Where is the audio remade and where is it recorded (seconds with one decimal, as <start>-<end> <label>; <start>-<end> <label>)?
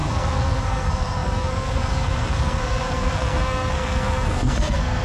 0.0-5.0 remade